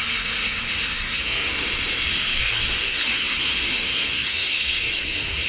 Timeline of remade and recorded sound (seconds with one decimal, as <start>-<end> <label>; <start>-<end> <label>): 0.0-1.5 remade; 1.5-2.4 recorded; 2.4-5.5 remade